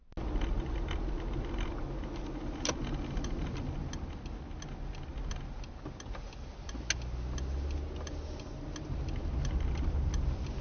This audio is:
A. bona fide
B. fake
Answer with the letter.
A